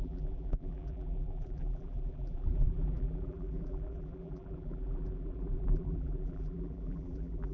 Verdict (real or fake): fake